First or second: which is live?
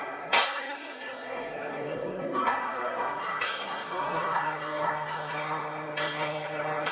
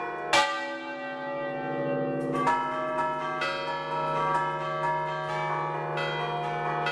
second